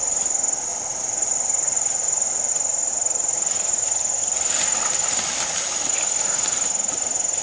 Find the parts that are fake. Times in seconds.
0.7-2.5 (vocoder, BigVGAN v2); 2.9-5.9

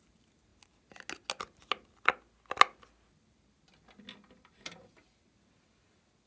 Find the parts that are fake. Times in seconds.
none

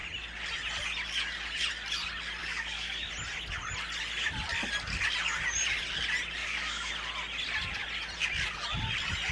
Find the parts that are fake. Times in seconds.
2.4-3.1 (codec, DAC); 6.4-6.9